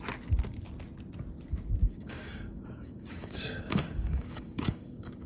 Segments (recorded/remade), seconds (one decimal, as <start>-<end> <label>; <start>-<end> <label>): 0.0-1.8 recorded; 1.8-5.3 remade